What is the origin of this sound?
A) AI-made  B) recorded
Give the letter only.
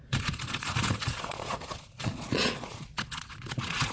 A